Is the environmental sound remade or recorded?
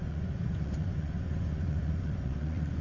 remade